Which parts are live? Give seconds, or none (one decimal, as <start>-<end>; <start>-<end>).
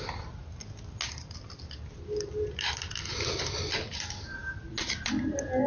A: 0.0-5.7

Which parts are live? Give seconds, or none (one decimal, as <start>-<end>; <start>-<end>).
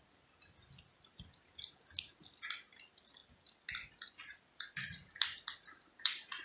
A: 0.0-6.4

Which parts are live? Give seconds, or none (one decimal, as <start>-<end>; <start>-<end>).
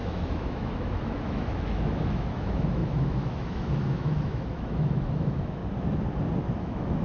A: 5.6-6.6